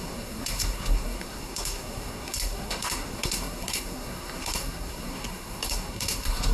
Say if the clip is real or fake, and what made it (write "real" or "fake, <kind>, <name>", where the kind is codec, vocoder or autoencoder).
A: fake, codec, SNAC